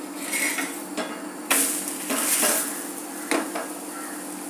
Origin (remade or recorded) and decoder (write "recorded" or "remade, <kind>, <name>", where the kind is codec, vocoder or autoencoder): recorded